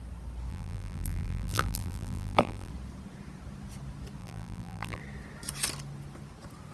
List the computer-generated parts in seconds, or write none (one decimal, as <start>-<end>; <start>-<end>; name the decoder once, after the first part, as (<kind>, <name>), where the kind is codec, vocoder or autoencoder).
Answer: 0.5-2.7 (vocoder, BigVGAN v2); 4.2-5.0